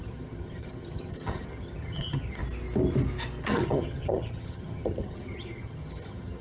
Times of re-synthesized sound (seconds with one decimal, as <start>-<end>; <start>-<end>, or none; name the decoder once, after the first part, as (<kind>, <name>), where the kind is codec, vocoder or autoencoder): 0.0-2.4 (vocoder, HiFi-GAN); 3.4-6.4